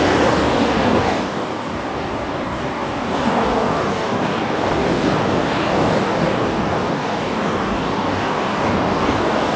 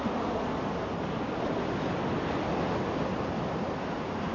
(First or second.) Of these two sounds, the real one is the second